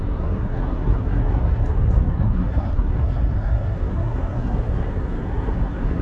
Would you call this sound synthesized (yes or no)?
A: yes